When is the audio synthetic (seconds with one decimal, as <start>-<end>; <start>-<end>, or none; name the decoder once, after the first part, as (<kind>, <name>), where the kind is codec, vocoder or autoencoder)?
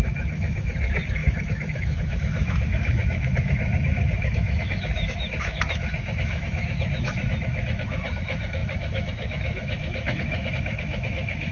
0.0-11.5 (autoencoder, DAC-VAE)